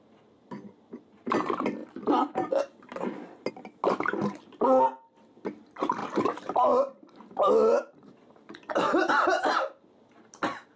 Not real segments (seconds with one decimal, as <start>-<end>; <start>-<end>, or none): 6.0-9.1